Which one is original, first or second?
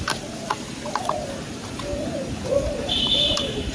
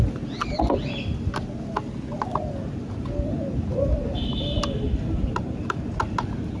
second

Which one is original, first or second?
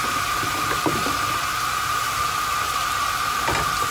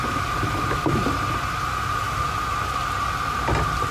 second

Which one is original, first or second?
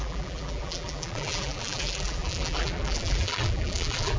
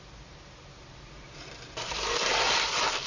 second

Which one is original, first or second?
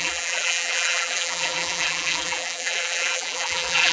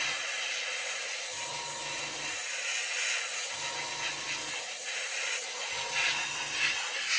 second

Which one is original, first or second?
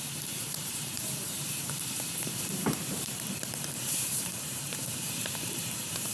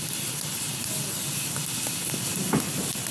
second